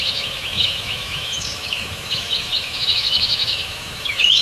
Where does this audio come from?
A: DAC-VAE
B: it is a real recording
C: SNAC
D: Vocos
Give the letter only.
A